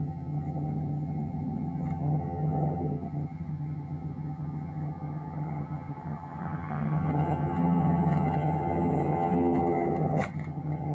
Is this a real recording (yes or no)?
no